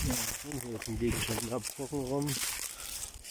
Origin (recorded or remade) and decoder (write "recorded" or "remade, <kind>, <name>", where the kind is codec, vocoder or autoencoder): recorded